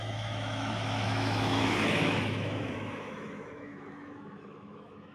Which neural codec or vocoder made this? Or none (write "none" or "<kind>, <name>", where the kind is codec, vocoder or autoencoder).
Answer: autoencoder, DAC-VAE